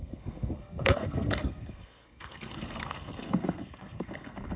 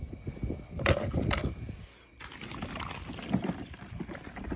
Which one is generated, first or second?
first